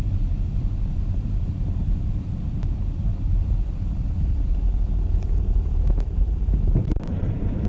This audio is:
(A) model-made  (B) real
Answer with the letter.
A